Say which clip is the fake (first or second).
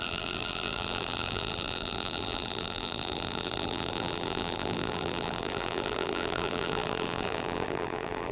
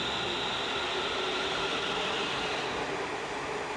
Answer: first